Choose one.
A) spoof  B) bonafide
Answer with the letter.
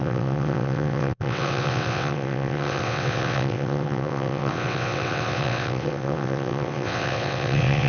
A